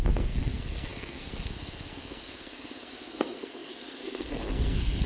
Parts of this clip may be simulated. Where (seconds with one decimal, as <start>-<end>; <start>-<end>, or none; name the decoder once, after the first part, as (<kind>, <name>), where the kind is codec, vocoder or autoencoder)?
0.0-5.1 (codec, SNAC)